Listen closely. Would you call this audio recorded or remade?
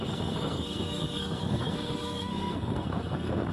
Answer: remade